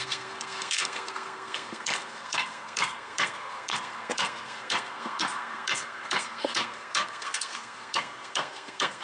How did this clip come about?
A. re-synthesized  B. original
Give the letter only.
A